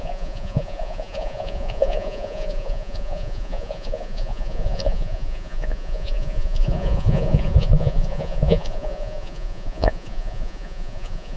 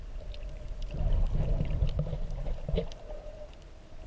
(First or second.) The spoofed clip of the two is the first